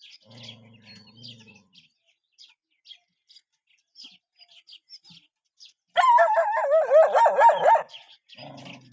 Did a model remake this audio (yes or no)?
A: no